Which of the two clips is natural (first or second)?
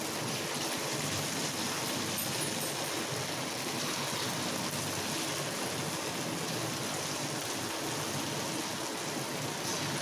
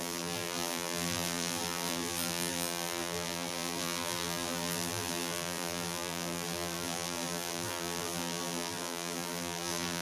first